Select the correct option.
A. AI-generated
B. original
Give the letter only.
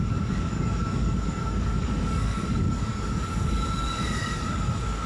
A